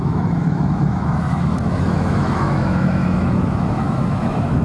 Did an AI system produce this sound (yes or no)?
yes